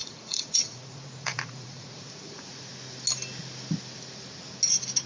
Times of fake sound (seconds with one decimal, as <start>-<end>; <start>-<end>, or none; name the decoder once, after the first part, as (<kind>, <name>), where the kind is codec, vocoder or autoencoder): 0.0-2.7 (vocoder, Vocos)